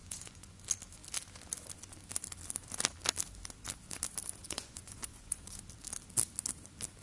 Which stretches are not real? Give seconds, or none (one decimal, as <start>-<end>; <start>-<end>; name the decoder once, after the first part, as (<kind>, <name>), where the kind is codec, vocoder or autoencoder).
0.0-0.6 (vocoder, Vocos); 4.4-5.6

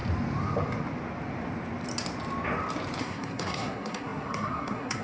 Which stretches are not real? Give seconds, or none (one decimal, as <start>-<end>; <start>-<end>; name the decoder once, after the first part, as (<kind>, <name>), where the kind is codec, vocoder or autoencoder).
3.0-5.0 (codec, SNAC)

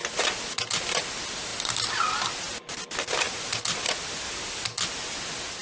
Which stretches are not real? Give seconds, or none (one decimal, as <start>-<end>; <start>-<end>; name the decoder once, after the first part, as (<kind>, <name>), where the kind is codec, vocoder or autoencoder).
none

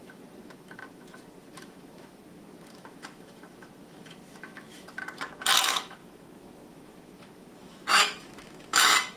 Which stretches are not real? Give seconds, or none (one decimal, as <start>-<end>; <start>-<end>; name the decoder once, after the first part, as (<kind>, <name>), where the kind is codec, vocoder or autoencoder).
0.0-5.0 (autoencoder, DAC-VAE); 5.6-9.2

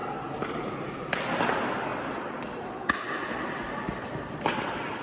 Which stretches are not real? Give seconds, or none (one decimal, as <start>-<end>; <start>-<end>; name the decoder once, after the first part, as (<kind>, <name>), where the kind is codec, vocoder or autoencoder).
none

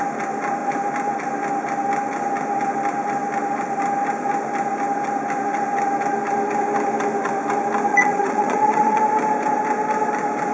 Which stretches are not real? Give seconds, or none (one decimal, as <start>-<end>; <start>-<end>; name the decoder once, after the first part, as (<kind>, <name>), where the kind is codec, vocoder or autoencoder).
7.9-9.0 (vocoder, Vocos)

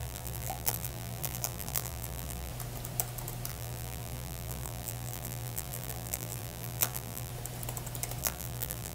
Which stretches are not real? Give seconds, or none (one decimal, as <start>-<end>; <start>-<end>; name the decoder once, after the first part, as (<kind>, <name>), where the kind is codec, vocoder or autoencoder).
0.0-2.5 (vocoder, BigVGAN v2); 3.5-7.3; 8.2-8.9

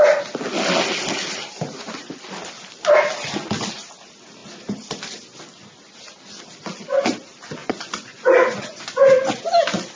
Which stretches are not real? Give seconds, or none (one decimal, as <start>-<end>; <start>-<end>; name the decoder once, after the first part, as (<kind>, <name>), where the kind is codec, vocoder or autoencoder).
7.6-9.3 (vocoder, Vocos)